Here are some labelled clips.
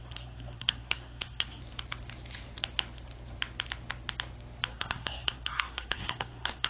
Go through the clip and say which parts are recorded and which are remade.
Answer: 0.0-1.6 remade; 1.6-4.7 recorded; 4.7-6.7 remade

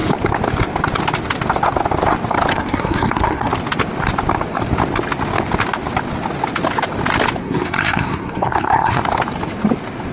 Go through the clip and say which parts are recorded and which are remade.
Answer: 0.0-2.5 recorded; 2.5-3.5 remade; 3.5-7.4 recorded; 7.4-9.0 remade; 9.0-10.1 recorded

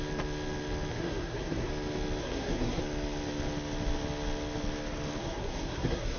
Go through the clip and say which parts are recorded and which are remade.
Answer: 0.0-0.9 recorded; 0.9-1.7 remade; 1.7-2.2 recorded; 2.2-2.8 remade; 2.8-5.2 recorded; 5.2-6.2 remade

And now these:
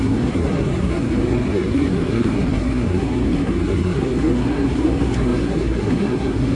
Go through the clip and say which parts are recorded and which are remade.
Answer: 0.0-6.5 remade